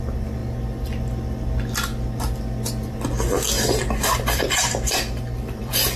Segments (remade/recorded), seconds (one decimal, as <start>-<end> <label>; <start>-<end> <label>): 0.0-0.4 remade; 0.4-4.0 recorded; 4.0-6.0 remade